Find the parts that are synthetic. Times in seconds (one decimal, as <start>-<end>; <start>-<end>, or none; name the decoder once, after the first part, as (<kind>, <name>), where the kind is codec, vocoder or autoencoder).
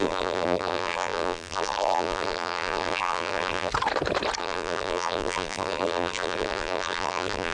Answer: 0.0-3.7 (vocoder, BigVGAN v2); 4.4-7.5